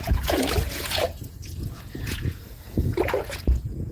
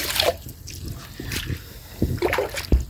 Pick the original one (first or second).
second